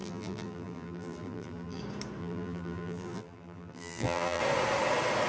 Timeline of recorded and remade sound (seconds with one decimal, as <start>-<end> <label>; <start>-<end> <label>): 0.0-1.8 remade; 1.8-2.2 recorded; 2.2-4.4 remade; 4.4-5.3 recorded